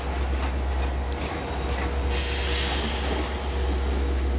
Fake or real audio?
real